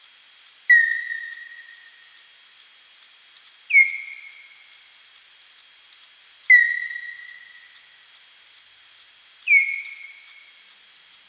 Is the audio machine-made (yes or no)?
no